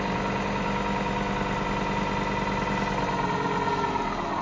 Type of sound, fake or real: real